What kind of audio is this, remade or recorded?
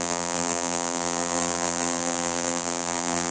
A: remade